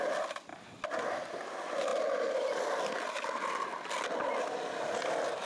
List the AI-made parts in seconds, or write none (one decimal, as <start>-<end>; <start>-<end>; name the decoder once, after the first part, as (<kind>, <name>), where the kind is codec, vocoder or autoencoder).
1.9-3.9 (vocoder, BigVGAN v2)